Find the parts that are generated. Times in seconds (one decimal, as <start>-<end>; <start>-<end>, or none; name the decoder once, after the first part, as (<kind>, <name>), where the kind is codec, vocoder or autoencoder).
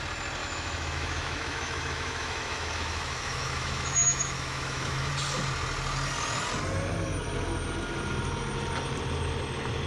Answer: 0.4-5.1 (autoencoder, DAC-VAE)